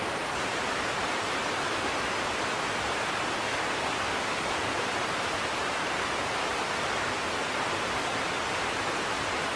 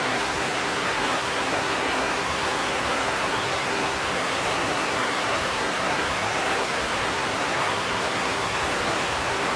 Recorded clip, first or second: first